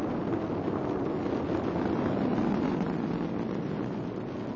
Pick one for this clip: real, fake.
real